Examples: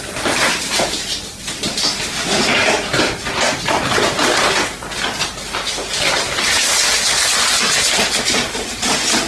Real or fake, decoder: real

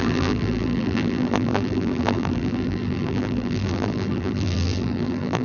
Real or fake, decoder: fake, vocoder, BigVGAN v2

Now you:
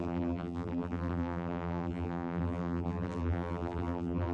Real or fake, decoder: fake, vocoder, BigVGAN v2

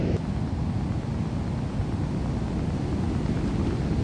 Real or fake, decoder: real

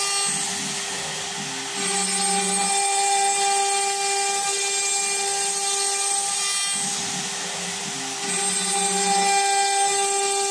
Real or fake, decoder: real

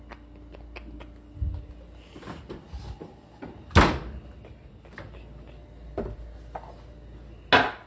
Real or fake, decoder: real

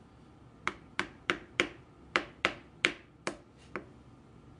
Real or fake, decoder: fake, vocoder, BigVGAN v2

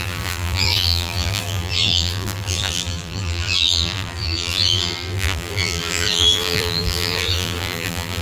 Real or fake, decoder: fake, vocoder, BigVGAN v2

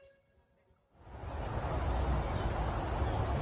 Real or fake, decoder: real